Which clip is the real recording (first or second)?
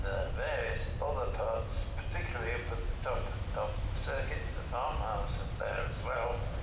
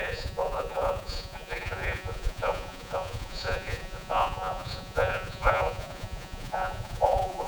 first